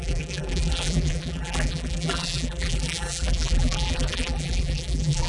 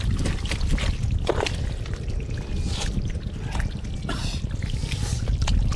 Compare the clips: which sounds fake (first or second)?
first